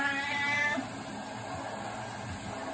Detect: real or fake real